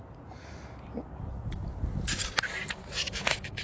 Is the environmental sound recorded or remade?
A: recorded